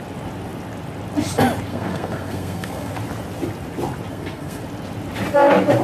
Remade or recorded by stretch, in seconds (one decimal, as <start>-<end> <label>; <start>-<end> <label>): 0.0-1.7 recorded; 1.7-2.9 remade; 2.9-4.1 recorded; 4.1-4.6 remade; 4.6-5.8 recorded